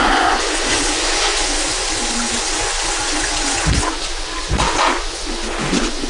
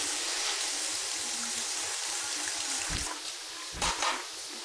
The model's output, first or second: first